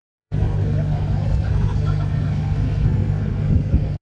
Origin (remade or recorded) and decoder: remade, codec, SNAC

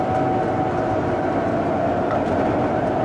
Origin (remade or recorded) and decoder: recorded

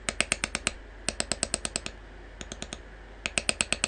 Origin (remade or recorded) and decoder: recorded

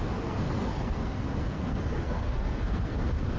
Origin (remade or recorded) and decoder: remade, codec, SNAC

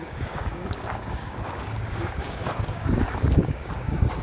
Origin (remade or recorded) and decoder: remade, codec, DAC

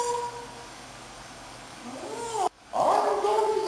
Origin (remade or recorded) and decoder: remade, codec, DAC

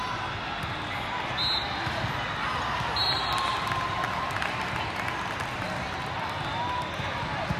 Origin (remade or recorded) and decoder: recorded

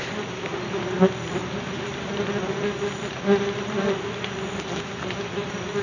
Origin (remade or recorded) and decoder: recorded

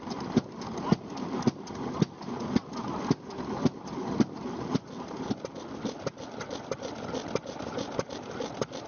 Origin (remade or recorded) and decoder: recorded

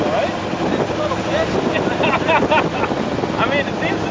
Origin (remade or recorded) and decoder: recorded